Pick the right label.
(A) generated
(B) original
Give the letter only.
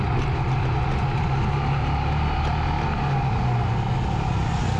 B